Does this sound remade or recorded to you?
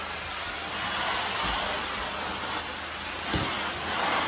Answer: recorded